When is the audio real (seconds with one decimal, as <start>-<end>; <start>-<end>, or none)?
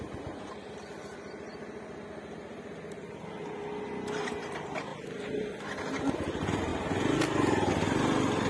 0.0-8.5